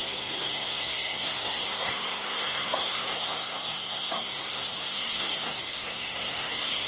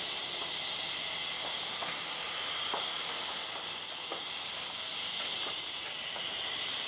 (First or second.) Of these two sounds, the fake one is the first